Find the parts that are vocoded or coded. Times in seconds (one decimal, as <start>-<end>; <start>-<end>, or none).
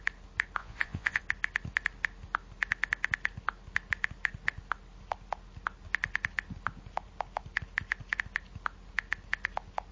0.6-1.2